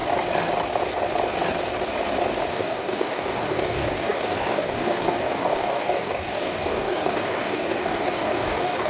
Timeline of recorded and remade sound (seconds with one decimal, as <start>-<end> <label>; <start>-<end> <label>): 0.0-2.5 recorded; 2.5-8.9 remade